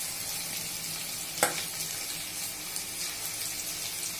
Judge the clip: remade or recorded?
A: recorded